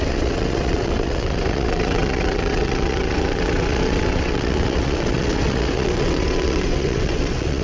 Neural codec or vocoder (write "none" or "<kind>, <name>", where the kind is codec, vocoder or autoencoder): vocoder, WaveNeXt